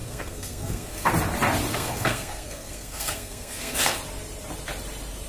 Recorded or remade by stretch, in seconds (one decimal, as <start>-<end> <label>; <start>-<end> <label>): 0.0-1.1 remade; 1.1-1.7 recorded; 1.7-4.0 remade; 4.0-5.3 recorded